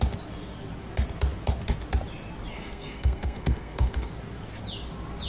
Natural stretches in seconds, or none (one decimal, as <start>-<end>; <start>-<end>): 0.0-2.5; 4.1-5.3